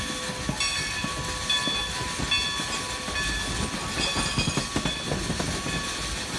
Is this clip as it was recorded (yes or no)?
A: yes